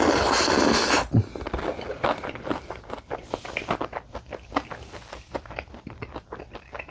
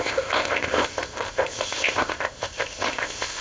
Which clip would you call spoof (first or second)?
second